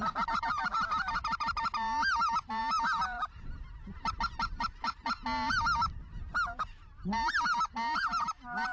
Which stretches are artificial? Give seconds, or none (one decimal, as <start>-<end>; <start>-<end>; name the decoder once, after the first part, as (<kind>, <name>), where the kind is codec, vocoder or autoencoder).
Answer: none

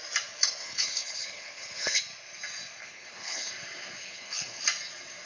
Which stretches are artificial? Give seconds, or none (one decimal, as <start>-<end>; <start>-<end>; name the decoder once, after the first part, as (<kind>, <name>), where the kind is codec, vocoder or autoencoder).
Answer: 0.6-2.0 (codec, HILCodec); 2.8-3.5; 4.0-4.6

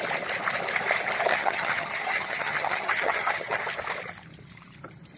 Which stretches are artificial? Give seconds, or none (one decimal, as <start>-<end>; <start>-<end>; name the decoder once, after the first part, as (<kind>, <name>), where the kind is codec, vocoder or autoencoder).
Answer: 1.3-3.6 (vocoder, HiFi-GAN)

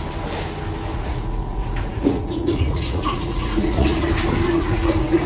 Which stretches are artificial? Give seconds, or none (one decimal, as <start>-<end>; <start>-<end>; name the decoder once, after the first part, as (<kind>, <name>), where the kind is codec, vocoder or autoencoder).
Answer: 0.9-4.1 (vocoder, Vocos); 4.5-5.3

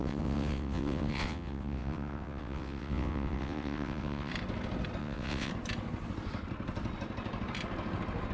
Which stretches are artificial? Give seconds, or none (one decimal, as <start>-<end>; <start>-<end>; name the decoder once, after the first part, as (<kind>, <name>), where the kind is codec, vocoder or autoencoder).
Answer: 0.0-4.3 (vocoder, WaveNeXt); 5.0-5.5

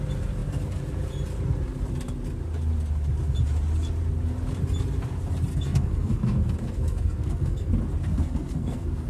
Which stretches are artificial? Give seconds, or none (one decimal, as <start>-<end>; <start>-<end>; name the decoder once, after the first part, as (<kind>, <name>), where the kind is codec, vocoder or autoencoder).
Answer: 5.5-7.7 (codec, SNAC); 8.1-9.1